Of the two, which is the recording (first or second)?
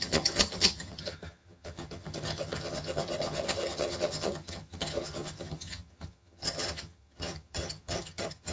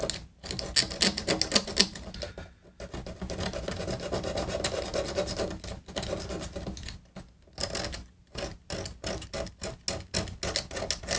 second